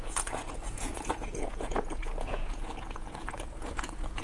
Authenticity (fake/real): fake